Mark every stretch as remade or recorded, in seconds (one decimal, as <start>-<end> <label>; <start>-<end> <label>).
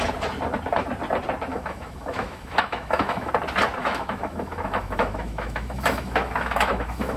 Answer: 0.0-1.5 recorded; 1.5-3.3 remade; 3.3-3.8 recorded; 3.8-7.2 remade